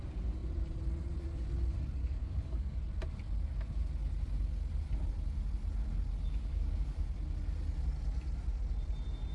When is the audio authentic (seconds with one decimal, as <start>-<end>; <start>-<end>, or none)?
0.0-2.0; 2.8-6.5; 7.0-9.3